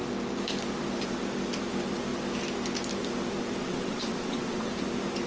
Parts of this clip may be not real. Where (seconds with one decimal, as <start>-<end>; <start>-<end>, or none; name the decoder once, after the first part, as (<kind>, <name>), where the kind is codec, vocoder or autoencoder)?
3.6-4.7 (vocoder, WaveNeXt)